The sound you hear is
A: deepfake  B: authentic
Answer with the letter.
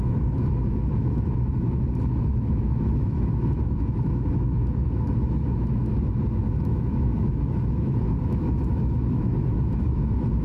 A